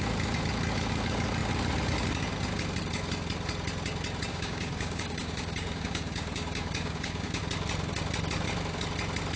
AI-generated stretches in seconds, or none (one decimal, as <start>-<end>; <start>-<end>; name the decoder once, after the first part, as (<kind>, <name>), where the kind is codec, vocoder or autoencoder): 4.3-7.4 (codec, DAC)

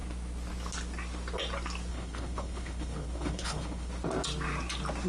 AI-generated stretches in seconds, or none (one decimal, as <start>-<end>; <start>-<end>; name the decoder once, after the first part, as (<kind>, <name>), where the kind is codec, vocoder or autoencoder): 1.9-3.9 (codec, HILCodec)

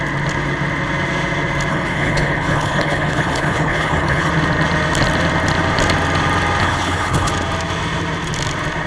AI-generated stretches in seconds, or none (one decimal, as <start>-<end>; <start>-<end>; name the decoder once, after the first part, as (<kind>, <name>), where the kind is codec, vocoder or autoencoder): 1.7-4.3 (codec, HILCodec); 6.6-7.3

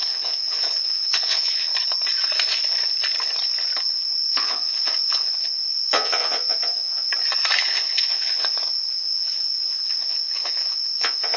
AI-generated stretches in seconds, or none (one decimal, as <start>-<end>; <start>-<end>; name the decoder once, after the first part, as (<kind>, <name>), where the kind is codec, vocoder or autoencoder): 0.0-1.7 (vocoder, Vocos); 3.9-7.1; 7.7-11.4

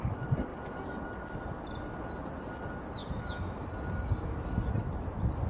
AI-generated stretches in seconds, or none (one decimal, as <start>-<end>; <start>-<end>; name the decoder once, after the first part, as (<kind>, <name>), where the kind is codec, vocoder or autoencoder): 3.0-3.6 (autoencoder, DAC-VAE)

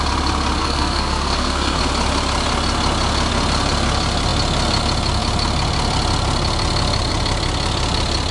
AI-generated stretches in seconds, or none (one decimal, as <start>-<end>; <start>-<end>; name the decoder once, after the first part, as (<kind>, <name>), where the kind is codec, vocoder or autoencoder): 0.6-1.8 (codec, SNAC)